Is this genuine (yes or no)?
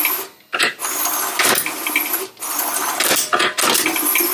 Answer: yes